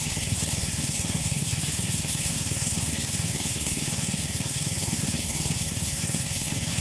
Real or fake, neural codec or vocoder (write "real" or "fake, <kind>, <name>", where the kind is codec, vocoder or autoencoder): fake, codec, SNAC